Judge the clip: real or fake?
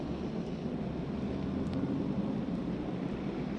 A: real